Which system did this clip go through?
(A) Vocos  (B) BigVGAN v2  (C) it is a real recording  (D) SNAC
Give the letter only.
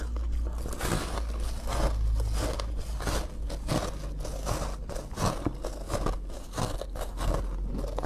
C